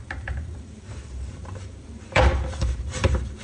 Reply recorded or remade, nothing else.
remade